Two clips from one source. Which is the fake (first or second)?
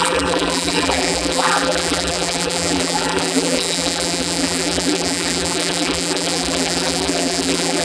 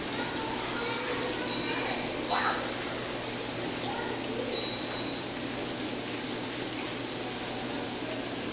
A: first